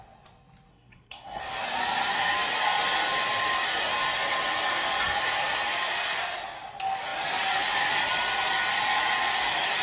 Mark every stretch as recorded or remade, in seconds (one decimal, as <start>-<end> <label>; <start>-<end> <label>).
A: 0.0-0.7 recorded; 0.7-1.4 remade; 1.4-9.8 recorded